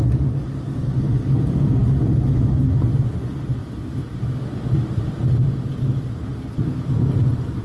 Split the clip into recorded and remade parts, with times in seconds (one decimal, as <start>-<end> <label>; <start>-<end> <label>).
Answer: 0.0-3.6 recorded; 3.6-5.1 remade; 5.1-7.6 recorded